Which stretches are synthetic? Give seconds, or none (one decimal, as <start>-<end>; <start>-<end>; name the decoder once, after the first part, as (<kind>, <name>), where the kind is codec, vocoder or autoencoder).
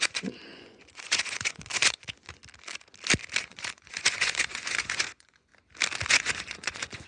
0.0-2.4 (vocoder, Vocos); 3.4-5.5; 6.1-7.1